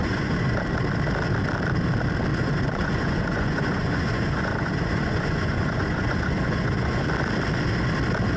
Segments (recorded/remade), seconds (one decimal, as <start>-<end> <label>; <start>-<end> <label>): 0.0-0.6 remade; 0.6-2.3 recorded; 2.3-7.1 remade; 7.1-8.4 recorded